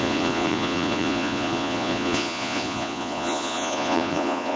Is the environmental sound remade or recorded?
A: remade